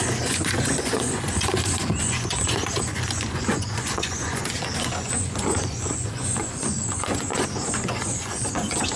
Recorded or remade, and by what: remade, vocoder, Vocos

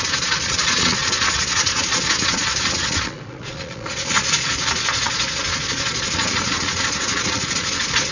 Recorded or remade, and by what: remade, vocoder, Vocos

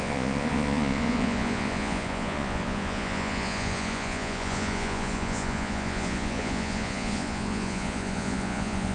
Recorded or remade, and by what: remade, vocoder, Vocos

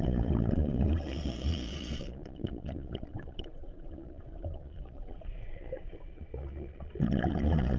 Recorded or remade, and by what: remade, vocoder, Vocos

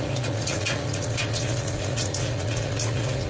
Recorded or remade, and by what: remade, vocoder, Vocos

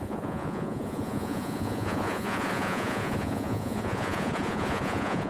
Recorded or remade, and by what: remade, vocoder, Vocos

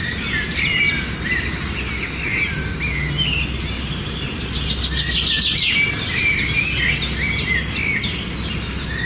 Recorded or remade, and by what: recorded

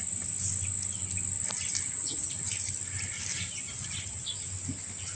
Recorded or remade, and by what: recorded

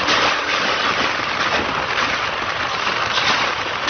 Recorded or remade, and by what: recorded